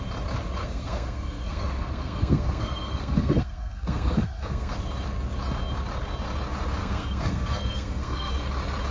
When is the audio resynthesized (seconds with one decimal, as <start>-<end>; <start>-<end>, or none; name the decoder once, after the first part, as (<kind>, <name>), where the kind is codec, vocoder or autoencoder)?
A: 0.6-4.8 (codec, SNAC); 6.8-8.3